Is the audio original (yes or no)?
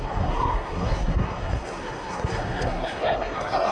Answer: no